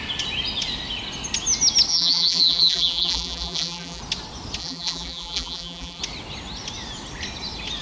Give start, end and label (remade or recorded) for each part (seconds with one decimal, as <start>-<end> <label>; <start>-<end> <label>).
0.0-1.9 recorded; 1.9-4.0 remade; 4.0-4.6 recorded; 4.6-6.0 remade; 6.0-7.8 recorded